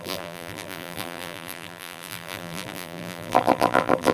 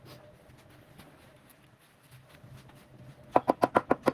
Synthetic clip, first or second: first